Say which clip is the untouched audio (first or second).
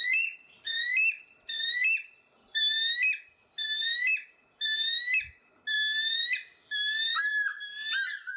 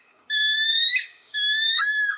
first